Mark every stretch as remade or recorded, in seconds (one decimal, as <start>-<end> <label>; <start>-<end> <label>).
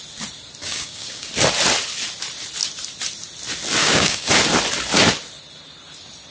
0.0-0.6 recorded; 0.6-1.3 remade; 1.3-3.8 recorded; 3.8-4.3 remade; 4.3-6.3 recorded